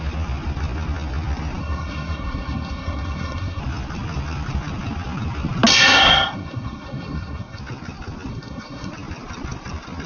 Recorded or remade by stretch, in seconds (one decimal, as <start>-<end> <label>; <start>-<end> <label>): 0.0-1.6 recorded; 1.6-3.6 remade; 3.6-5.7 recorded; 5.7-7.6 remade; 7.6-8.3 recorded; 8.3-8.9 remade; 8.9-10.1 recorded